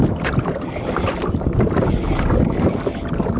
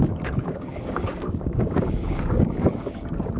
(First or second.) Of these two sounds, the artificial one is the second